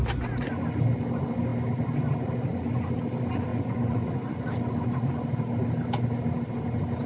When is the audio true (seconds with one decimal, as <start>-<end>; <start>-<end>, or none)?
0.0-3.5; 4.5-7.1